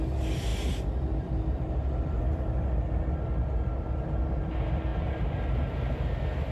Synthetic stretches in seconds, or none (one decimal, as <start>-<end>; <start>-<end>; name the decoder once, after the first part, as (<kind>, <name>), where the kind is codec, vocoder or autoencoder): none